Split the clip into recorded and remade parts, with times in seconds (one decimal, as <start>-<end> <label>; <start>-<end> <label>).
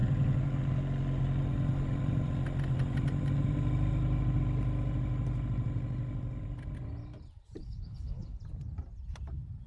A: 0.0-7.6 recorded; 7.6-8.4 remade; 8.4-9.7 recorded